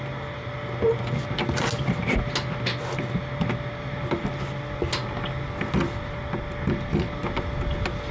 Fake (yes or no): no